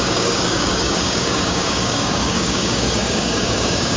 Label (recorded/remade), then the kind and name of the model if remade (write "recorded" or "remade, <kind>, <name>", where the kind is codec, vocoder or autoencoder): remade, codec, DAC